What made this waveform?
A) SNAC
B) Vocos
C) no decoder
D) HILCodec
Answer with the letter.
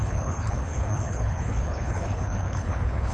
D